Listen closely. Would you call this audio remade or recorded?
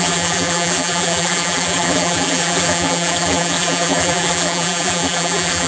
remade